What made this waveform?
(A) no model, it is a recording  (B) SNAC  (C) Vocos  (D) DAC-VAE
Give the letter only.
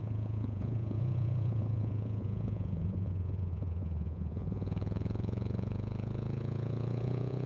C